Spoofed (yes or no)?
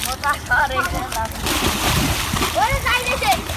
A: no